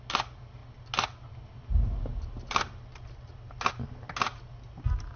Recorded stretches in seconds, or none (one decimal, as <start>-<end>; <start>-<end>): 0.0-5.2